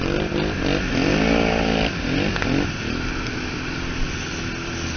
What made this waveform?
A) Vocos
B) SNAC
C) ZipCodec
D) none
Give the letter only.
D